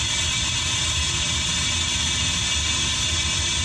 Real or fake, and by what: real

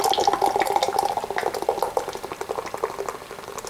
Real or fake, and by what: real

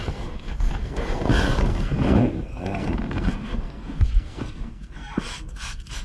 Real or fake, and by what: fake, codec, SNAC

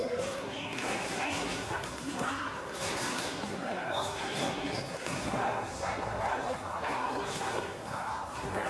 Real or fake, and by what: fake, codec, SNAC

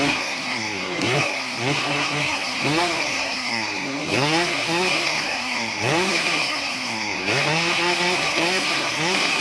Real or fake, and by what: fake, codec, SNAC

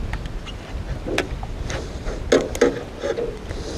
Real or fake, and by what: real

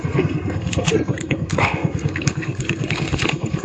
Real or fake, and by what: fake, codec, SNAC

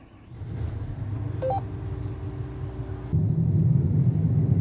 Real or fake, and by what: real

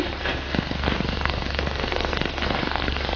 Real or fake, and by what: fake, codec, SNAC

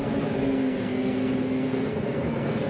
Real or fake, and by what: fake, codec, SNAC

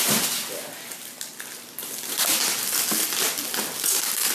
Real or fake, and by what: real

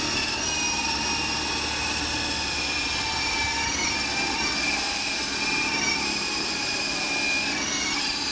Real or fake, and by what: real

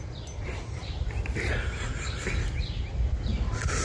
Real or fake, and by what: real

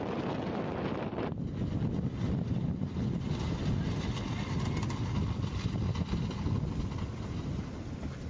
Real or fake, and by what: real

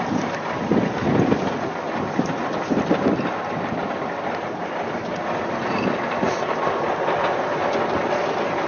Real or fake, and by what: real